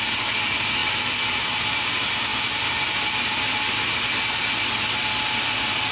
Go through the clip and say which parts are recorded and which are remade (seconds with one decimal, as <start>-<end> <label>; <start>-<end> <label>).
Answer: 0.0-5.9 recorded